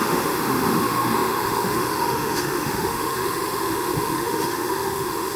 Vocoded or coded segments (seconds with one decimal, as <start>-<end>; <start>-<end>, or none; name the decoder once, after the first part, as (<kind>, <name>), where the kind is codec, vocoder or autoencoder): 0.0-5.4 (autoencoder, DAC-VAE)